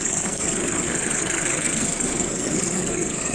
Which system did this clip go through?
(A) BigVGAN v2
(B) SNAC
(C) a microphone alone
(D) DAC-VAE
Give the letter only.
B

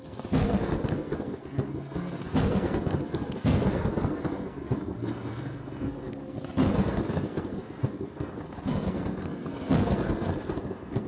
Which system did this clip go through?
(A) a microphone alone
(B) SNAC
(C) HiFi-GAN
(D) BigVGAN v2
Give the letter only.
B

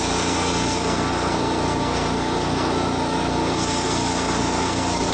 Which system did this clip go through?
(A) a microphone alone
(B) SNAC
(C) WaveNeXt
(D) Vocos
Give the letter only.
B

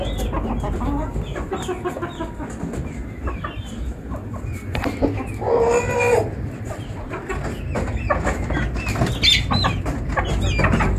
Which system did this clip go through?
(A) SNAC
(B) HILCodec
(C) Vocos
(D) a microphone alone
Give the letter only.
D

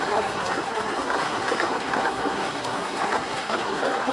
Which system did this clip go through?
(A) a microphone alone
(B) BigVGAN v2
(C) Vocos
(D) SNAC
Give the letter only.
D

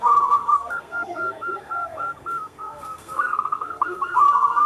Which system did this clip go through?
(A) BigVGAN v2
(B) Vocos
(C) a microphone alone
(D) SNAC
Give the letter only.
D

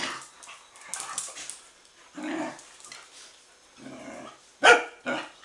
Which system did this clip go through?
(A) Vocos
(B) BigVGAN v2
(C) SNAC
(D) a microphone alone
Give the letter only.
D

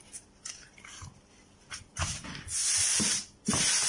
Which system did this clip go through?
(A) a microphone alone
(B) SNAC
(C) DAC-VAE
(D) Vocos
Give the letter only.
A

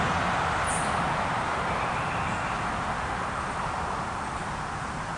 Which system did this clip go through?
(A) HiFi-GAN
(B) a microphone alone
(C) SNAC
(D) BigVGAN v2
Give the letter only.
B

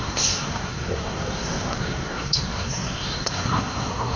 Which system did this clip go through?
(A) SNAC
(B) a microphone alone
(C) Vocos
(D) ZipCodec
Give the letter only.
A